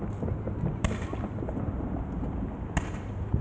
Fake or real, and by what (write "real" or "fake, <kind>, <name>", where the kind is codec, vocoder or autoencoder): real